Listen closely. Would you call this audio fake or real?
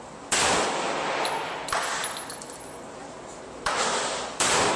real